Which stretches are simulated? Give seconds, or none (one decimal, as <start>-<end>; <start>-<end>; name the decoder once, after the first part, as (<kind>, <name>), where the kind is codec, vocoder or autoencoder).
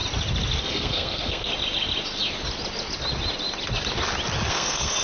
0.6-1.5 (codec, SNAC); 4.5-5.0